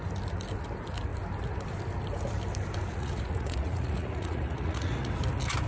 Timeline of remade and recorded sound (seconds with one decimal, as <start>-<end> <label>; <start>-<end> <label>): 0.0-2.9 recorded; 2.9-5.1 remade; 5.1-5.7 recorded

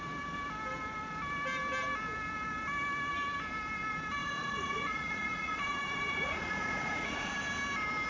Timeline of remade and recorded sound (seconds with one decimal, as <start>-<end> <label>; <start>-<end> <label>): 0.0-4.2 recorded; 4.2-7.3 remade; 7.3-8.1 recorded

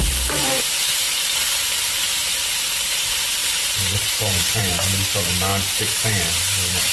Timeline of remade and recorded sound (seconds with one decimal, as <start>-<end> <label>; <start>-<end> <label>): 0.0-6.9 remade

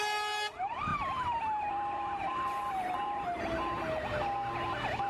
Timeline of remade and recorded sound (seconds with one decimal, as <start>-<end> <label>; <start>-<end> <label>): 0.0-0.9 recorded; 0.9-3.4 remade; 3.4-5.1 recorded

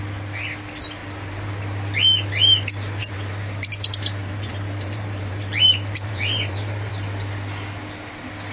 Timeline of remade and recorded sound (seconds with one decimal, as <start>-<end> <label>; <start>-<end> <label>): 0.0-1.0 recorded; 1.0-1.5 remade; 1.5-3.0 recorded; 3.0-3.7 remade; 3.7-4.2 recorded; 4.2-6.9 remade; 6.9-8.5 recorded

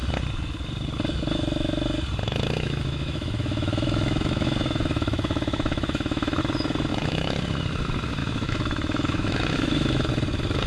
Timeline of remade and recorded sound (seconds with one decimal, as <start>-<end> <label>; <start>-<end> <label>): 0.0-2.2 recorded; 2.2-6.4 remade; 6.4-6.9 recorded; 6.9-7.4 remade; 7.4-8.2 recorded; 8.2-10.1 remade; 10.1-10.7 recorded

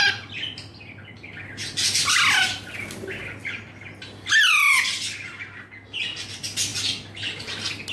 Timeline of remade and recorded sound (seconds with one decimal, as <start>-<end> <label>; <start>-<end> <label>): 0.0-7.9 recorded

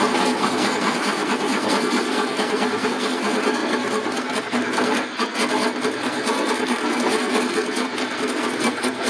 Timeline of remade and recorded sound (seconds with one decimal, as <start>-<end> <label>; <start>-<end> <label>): 0.0-9.1 remade